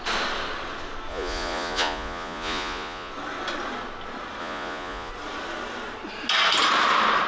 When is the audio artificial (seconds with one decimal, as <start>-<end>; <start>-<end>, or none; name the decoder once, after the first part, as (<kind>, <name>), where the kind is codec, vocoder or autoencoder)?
1.1-3.1 (vocoder, Vocos); 4.4-5.1